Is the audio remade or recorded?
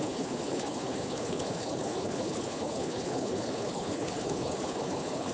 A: remade